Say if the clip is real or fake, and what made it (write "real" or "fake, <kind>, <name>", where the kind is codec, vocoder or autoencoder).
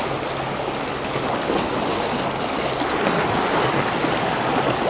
real